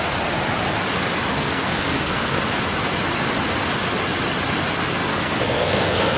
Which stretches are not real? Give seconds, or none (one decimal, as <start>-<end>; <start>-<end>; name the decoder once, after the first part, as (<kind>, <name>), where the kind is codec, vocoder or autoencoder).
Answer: 1.3-2.4 (codec, SNAC); 5.1-6.2